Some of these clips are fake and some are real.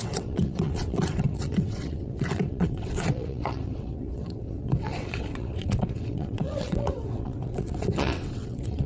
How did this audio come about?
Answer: fake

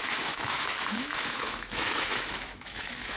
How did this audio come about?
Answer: fake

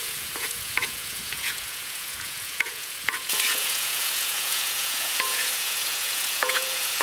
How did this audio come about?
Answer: fake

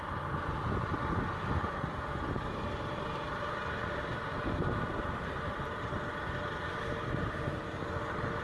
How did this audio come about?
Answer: real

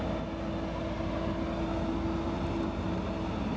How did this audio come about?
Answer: real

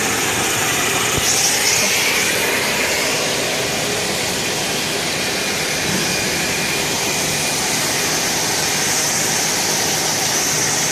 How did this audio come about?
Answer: real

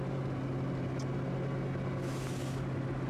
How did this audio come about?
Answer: real